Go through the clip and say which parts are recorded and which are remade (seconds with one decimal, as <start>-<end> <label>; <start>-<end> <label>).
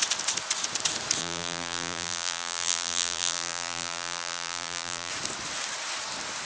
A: 0.0-1.2 recorded; 1.2-5.1 remade; 5.1-6.5 recorded